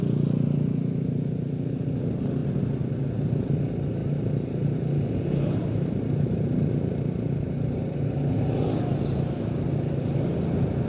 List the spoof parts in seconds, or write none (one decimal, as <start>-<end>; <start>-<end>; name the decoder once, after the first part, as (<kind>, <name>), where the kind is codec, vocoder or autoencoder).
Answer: 4.0-9.2 (vocoder, BigVGAN v2)